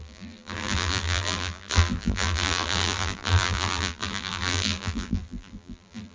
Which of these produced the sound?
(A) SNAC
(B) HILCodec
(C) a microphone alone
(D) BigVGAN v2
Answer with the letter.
D